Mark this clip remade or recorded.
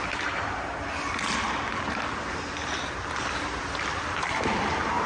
recorded